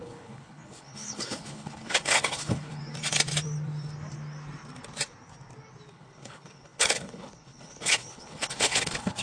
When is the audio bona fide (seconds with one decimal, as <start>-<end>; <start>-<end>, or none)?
2.8-5.9